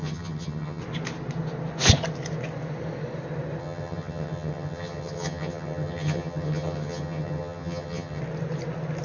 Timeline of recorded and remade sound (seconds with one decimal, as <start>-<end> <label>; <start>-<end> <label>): 0.0-0.8 remade; 0.8-3.6 recorded; 3.6-8.2 remade; 8.2-9.0 recorded